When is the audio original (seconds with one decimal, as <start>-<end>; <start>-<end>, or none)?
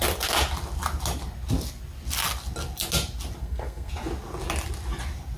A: 0.0-3.4; 3.9-5.4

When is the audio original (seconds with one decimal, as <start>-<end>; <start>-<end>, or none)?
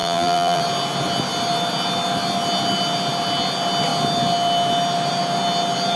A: 0.6-6.0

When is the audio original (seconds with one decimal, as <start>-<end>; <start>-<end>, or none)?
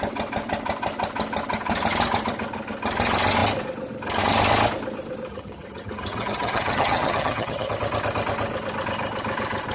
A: 0.0-5.3; 7.7-9.7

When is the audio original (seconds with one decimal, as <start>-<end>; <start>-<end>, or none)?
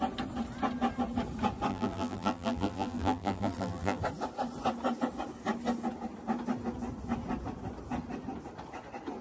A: 0.0-1.7; 4.0-9.2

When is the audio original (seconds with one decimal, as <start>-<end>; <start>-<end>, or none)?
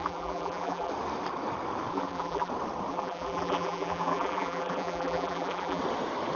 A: 0.9-1.9; 2.5-2.9; 5.8-6.4